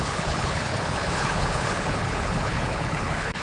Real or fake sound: fake